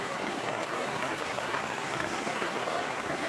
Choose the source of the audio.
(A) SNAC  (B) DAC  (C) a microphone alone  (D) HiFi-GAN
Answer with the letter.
A